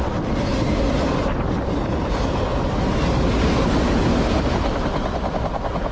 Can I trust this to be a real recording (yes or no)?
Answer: yes